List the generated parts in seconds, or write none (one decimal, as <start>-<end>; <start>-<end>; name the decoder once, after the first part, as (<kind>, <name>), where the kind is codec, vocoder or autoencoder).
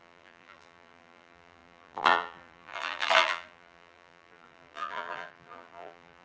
0.0-6.2 (vocoder, BigVGAN v2)